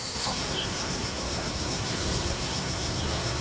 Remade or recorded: remade